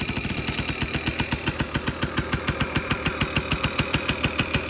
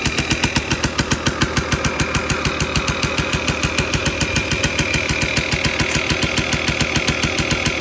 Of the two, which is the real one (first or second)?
second